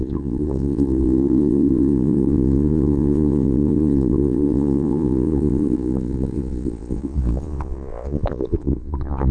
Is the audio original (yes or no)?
no